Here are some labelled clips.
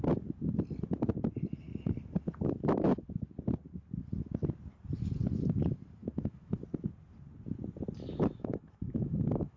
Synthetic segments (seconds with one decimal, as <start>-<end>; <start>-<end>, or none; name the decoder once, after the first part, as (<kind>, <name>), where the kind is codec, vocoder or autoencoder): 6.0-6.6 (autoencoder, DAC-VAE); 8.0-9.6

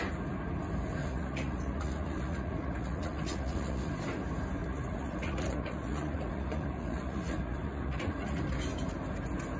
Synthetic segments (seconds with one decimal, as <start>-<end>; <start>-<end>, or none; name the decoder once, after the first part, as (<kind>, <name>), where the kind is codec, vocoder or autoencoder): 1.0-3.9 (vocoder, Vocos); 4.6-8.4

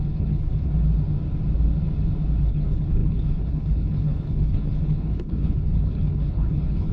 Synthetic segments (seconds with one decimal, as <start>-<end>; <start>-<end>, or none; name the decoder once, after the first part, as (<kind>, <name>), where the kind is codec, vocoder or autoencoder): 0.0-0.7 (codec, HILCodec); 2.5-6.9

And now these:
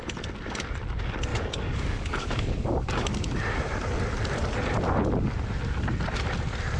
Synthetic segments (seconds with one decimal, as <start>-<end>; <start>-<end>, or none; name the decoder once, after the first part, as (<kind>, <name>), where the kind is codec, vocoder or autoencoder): 1.3-3.2 (codec, DAC)

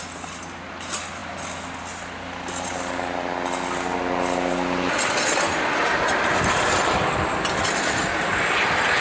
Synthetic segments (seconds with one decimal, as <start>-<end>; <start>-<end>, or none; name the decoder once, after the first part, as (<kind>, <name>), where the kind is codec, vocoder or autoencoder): none

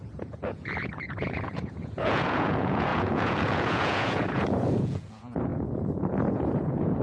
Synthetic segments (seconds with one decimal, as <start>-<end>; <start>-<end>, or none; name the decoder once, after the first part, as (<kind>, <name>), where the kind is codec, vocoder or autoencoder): 0.0-7.0 (vocoder, Vocos)

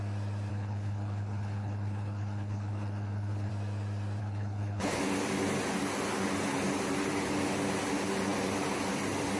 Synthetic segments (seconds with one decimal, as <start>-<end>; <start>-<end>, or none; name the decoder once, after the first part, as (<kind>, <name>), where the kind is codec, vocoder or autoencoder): 0.5-3.5 (codec, HILCodec); 4.2-5.0